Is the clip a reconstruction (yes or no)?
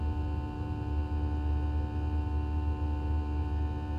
no